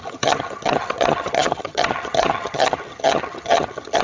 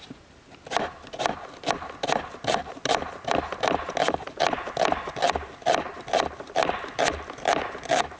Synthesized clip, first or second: first